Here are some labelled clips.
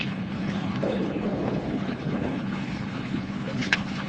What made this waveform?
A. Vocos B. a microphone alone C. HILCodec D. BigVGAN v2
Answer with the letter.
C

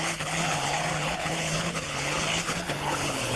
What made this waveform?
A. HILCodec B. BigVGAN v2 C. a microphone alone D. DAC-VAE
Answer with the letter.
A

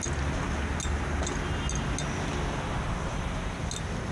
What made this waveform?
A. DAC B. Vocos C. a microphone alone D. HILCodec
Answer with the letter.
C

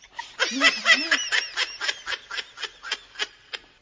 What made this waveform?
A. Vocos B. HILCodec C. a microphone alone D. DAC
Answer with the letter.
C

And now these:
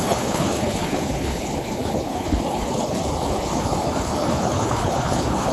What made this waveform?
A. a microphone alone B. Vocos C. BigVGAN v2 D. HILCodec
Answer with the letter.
D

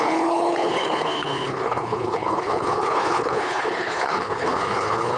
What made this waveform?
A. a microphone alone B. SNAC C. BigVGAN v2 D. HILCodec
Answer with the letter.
D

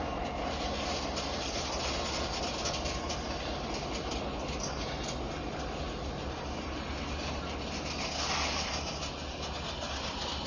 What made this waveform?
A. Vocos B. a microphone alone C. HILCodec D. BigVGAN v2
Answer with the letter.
B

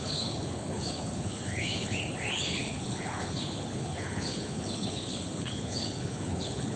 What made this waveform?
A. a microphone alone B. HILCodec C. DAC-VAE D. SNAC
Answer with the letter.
B